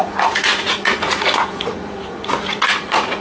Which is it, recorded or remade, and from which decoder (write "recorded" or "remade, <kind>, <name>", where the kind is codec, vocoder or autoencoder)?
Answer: remade, vocoder, Vocos